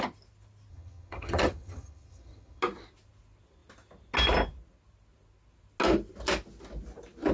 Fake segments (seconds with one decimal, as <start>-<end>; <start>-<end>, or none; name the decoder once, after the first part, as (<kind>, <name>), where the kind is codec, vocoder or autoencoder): 0.7-2.6 (vocoder, HiFi-GAN)